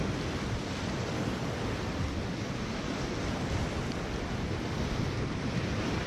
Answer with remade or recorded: recorded